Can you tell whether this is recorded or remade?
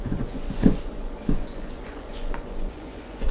remade